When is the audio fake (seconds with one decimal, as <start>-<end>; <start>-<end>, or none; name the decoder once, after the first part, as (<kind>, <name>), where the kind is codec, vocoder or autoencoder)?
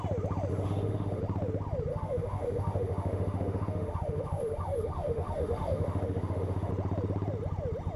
0.5-1.2 (autoencoder, DAC-VAE); 1.9-6.7